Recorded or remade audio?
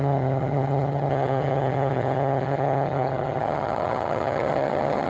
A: remade